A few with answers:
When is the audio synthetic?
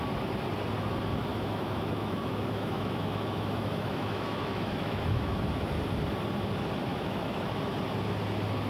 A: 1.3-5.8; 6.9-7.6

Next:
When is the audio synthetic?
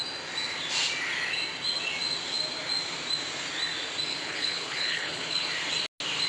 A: 4.1-5.5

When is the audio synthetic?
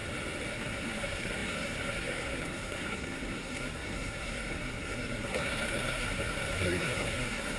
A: 0.5-7.6